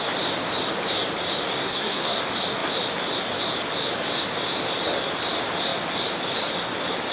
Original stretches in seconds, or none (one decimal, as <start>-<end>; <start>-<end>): 0.0-1.6; 2.2-7.1